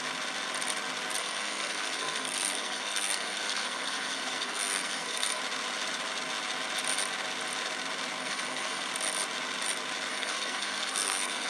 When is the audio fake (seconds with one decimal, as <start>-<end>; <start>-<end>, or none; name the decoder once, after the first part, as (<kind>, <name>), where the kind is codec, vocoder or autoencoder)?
1.2-5.4 (codec, SNAC); 8.2-8.9; 10.1-11.5